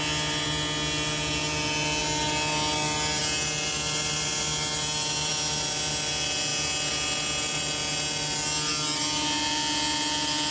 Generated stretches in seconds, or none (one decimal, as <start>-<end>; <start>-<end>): none